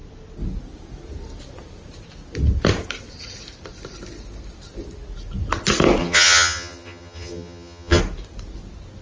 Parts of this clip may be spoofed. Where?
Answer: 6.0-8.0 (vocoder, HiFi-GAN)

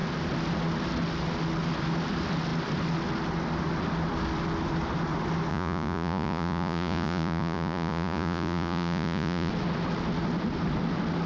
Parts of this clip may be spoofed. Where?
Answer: 5.5-9.5 (vocoder, Vocos)

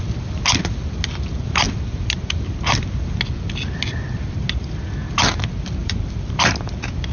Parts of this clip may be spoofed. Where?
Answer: 5.8-6.5 (vocoder, BigVGAN v2)

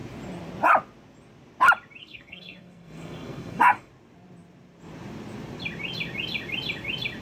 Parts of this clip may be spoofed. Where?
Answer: 2.0-3.9 (codec, SNAC)